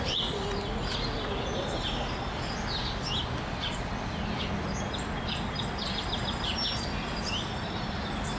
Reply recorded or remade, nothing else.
recorded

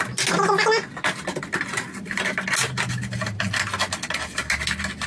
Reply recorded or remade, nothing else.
recorded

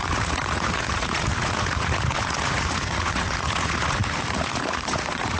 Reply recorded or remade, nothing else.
remade